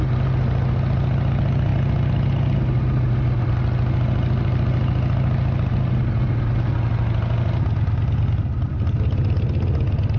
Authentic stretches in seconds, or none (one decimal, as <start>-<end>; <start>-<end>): 0.0-10.2